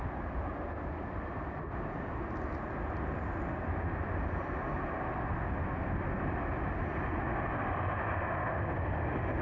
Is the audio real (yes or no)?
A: yes